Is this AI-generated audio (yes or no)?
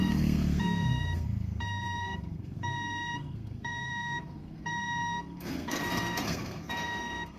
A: yes